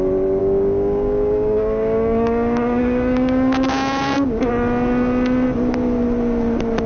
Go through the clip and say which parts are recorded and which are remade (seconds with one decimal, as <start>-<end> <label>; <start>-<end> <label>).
0.0-0.4 recorded; 0.4-4.5 remade; 4.5-6.9 recorded